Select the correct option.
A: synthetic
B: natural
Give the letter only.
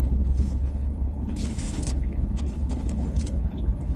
A